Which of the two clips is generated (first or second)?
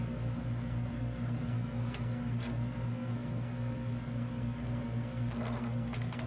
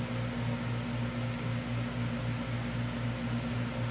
first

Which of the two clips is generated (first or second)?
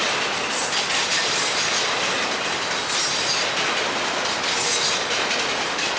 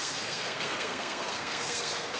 second